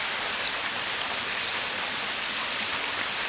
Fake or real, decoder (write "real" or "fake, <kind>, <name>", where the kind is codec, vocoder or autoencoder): fake, vocoder, BigVGAN v2